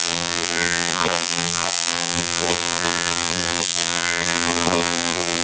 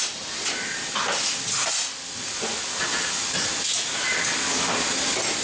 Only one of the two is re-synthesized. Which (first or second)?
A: first